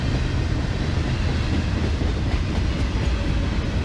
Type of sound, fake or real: real